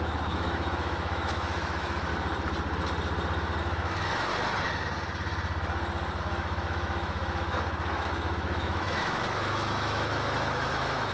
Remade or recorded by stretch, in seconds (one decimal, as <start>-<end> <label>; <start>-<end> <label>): 0.0-2.1 remade; 2.1-3.6 recorded; 3.6-4.3 remade; 4.3-6.2 recorded; 6.2-11.1 remade